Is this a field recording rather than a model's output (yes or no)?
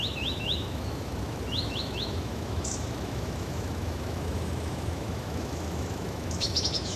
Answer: no